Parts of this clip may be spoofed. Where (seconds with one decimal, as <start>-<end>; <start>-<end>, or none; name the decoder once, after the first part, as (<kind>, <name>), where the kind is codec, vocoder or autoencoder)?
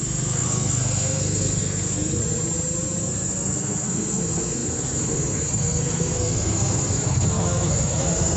0.0-2.2 (codec, SNAC); 3.0-8.4